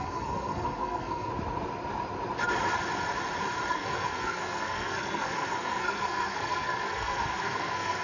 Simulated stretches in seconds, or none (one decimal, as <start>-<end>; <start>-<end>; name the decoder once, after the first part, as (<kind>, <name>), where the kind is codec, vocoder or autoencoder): 0.0-1.3 (codec, SNAC); 3.7-8.0

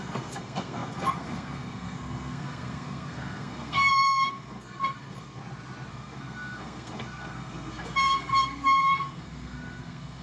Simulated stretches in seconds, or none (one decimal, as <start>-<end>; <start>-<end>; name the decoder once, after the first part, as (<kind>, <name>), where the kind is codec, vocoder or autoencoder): 0.0-5.4 (codec, SNAC); 5.9-10.2

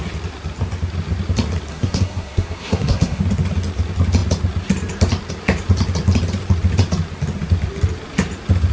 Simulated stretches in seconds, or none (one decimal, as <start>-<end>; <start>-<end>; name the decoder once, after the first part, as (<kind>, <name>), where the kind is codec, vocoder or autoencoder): 1.7-3.2 (codec, SNAC)

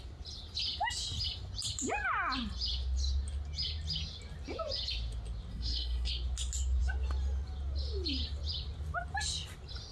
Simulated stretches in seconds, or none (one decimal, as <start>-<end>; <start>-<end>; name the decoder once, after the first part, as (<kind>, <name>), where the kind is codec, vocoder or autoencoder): 5.5-6.1 (codec, SNAC)

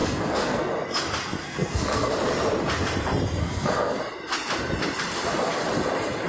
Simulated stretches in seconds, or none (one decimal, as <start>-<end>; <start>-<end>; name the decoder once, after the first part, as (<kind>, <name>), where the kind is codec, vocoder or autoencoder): 0.0-0.7 (codec, SNAC); 1.4-2.1; 3.4-4.0